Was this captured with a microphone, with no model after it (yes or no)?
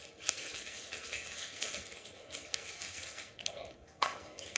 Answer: no